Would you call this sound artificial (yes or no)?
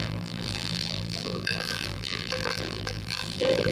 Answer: yes